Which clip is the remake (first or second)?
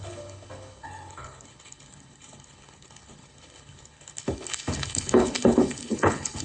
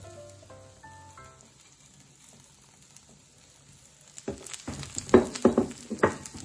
first